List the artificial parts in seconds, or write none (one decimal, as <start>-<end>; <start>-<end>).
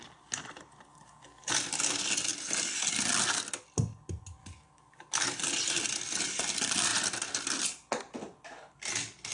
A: 0.9-1.5; 4.4-5.4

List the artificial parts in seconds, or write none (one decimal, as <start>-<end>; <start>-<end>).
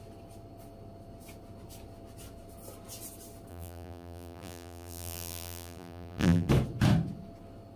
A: 3.5-6.5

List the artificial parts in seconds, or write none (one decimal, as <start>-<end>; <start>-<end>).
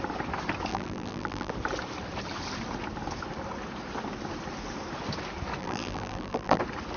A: 0.7-1.5; 5.6-6.6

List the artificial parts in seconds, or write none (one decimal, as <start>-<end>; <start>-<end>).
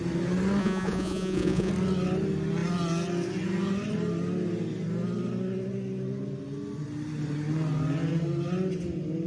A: 0.6-1.7